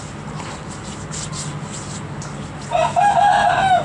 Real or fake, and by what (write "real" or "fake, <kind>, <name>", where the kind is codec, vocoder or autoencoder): real